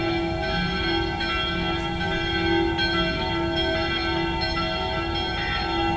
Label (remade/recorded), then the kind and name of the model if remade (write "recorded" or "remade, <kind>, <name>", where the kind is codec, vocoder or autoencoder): recorded